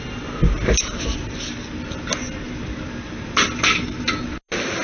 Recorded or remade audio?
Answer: recorded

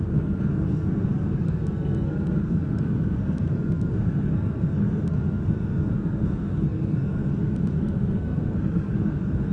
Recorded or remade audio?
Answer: remade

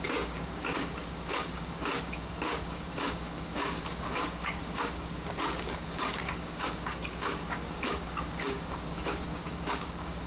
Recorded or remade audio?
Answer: remade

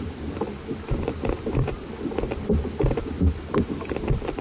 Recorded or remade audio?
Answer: remade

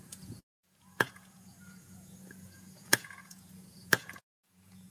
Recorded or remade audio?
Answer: remade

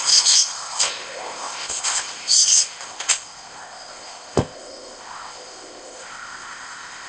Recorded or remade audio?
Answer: remade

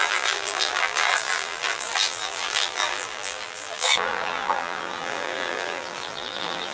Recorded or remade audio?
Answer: remade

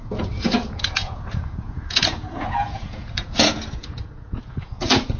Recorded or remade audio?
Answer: remade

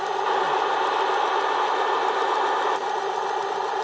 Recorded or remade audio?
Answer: recorded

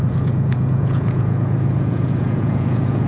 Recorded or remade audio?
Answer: remade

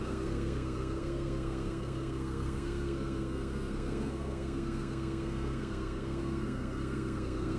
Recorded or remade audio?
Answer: remade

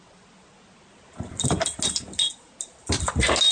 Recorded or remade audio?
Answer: recorded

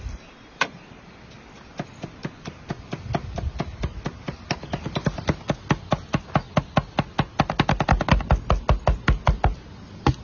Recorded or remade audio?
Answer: recorded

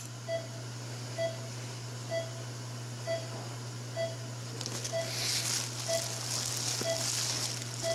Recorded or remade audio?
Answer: recorded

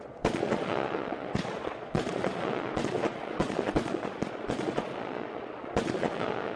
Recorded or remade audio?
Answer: remade